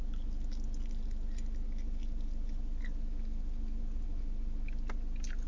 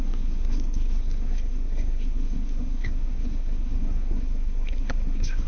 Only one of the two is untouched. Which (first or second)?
first